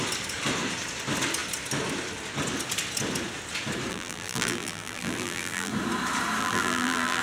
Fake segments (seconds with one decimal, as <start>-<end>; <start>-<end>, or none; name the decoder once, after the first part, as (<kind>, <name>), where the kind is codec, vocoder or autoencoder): 3.9-5.7 (vocoder, BigVGAN v2); 6.4-7.2